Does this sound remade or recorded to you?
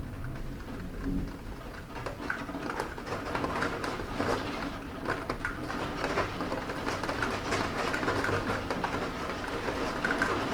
recorded